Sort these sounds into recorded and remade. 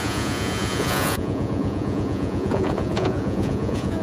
remade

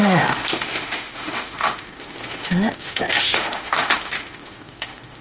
remade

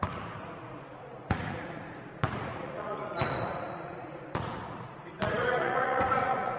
remade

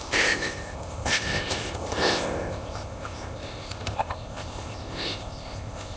remade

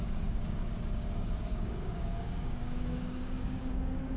remade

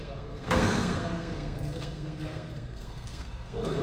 remade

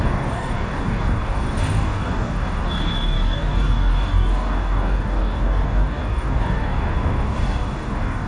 remade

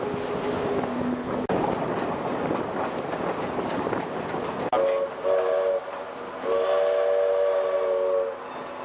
recorded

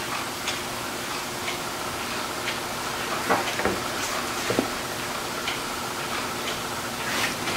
recorded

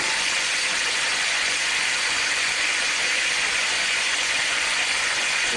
remade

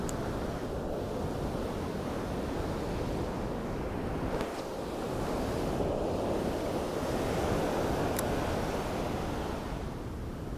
recorded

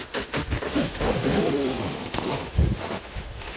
remade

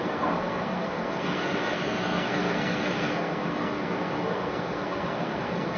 remade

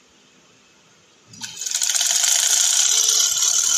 recorded